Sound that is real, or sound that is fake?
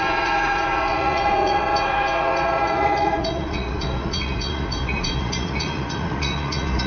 fake